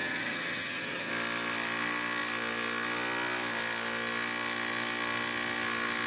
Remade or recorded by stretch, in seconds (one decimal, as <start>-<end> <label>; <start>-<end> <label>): 0.0-1.1 remade; 1.1-6.1 recorded